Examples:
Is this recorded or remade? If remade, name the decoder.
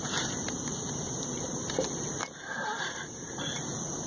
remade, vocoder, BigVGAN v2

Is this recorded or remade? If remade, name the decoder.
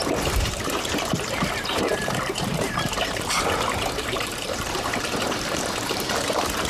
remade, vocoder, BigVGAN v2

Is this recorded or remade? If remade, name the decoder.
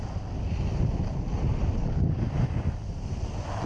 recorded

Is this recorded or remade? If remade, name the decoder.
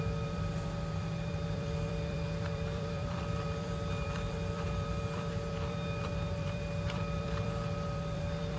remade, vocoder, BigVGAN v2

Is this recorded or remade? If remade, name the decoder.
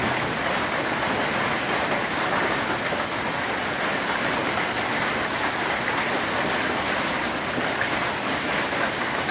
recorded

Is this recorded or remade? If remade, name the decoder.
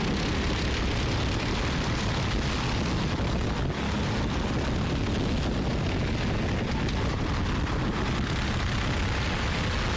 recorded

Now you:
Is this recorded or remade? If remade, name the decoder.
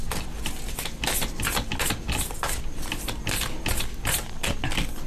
recorded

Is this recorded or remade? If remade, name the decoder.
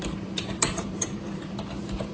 remade, vocoder, BigVGAN v2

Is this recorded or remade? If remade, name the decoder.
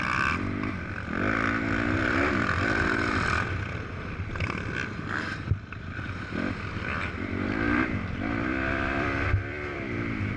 remade, vocoder, BigVGAN v2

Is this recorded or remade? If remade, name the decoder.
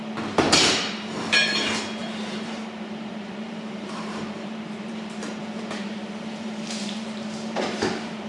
remade, vocoder, BigVGAN v2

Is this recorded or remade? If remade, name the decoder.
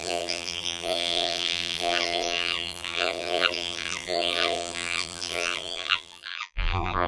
remade, vocoder, BigVGAN v2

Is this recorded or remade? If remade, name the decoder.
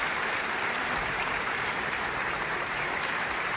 remade, vocoder, BigVGAN v2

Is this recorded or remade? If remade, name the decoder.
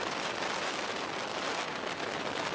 remade, vocoder, BigVGAN v2